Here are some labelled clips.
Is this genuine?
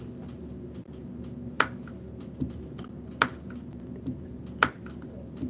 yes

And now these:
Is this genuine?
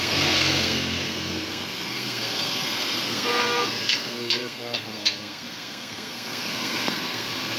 no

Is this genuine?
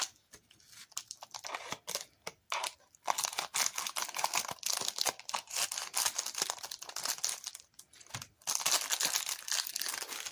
yes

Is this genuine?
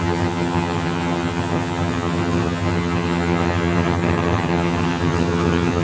no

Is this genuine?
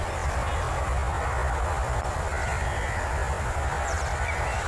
yes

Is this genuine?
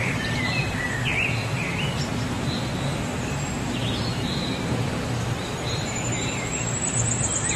no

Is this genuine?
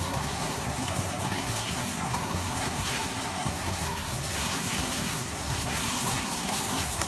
no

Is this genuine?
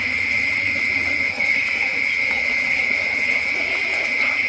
no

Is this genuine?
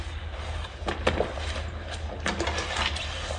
yes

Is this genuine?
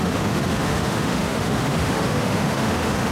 no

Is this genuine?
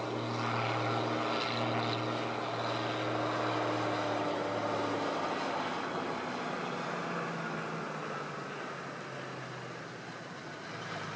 yes